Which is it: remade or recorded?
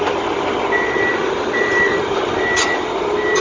recorded